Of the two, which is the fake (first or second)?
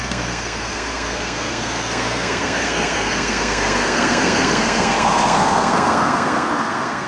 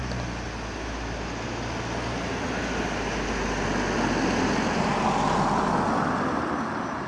first